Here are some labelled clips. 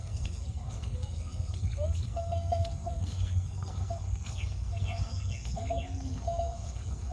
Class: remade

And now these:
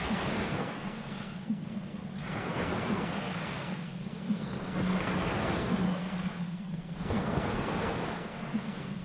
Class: remade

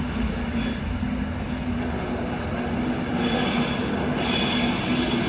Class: recorded